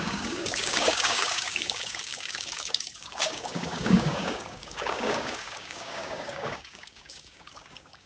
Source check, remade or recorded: remade